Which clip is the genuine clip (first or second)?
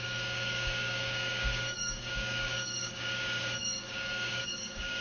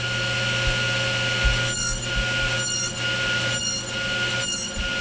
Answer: second